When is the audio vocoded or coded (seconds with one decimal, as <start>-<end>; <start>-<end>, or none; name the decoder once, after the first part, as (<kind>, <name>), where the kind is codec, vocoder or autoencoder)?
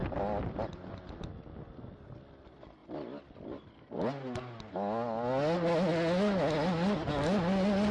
none